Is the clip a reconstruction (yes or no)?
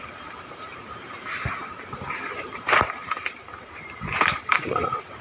yes